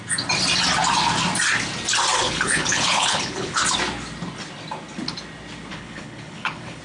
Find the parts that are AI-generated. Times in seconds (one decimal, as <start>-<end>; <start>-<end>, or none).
2.2-3.6; 5.7-6.8